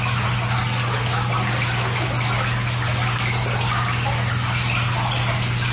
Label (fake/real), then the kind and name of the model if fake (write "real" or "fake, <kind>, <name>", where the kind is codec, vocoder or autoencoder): real